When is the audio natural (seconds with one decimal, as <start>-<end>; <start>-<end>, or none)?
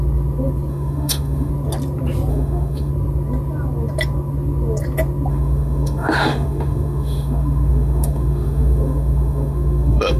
0.0-0.7; 1.5-2.3; 2.9-5.3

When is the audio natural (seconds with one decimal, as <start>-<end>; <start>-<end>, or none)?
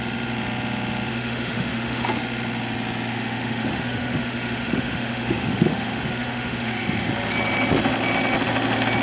0.0-1.1; 2.1-3.1; 7.1-9.0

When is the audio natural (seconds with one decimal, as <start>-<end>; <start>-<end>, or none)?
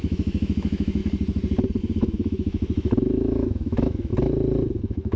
1.0-1.8; 4.1-4.8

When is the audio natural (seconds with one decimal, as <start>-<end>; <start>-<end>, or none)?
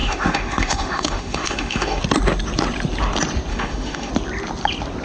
2.0-3.5; 4.1-5.0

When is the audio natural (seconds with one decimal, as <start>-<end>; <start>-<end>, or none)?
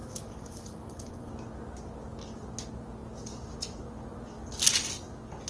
1.3-5.5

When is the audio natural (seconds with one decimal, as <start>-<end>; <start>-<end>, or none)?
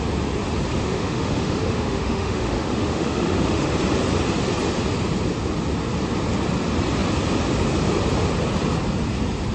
0.0-0.7; 3.7-9.5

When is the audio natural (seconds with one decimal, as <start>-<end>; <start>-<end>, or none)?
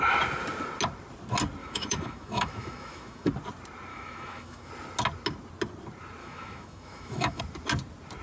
0.0-1.6; 3.3-3.9; 4.7-6.2; 7.4-8.2